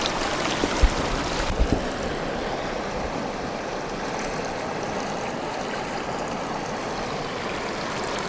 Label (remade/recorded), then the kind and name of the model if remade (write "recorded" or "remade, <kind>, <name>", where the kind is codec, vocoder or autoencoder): remade, vocoder, BigVGAN v2